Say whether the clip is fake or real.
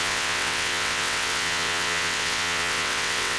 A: fake